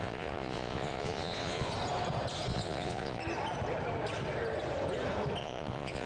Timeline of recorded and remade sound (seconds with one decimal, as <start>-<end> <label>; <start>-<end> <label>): 0.0-1.7 remade; 1.7-2.5 recorded; 2.5-3.2 remade; 3.2-5.4 recorded; 5.4-6.1 remade